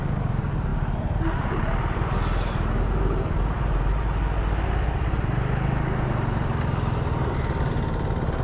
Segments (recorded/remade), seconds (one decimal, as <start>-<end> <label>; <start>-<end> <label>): 0.0-8.4 recorded